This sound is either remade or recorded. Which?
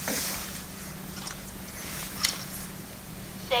remade